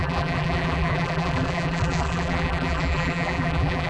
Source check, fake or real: fake